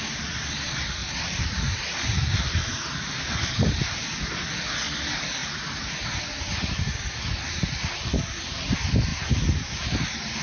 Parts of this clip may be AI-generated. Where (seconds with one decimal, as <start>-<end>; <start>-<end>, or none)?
1.0-4.2; 5.4-6.2